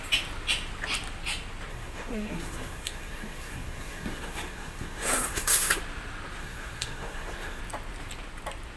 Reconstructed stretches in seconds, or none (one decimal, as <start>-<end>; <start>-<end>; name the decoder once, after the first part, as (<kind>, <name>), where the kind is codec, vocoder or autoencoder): 1.7-5.8 (codec, SNAC); 6.4-7.6